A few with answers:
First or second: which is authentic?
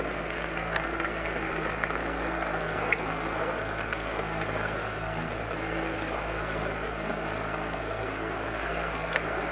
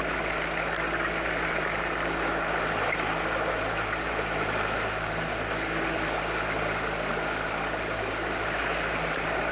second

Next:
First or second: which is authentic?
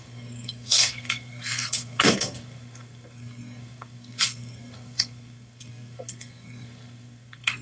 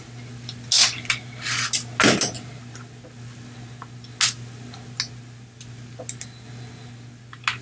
second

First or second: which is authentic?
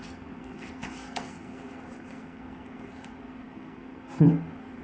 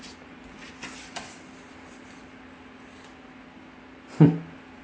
second